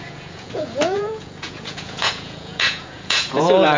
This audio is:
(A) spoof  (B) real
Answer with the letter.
A